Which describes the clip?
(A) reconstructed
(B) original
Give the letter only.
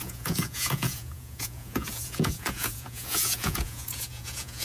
A